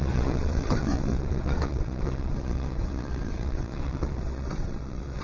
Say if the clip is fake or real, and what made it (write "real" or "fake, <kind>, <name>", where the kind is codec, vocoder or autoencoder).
fake, vocoder, WaveNeXt